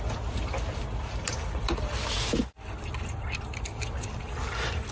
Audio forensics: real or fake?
real